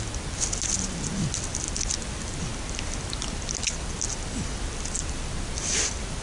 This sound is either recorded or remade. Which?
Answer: recorded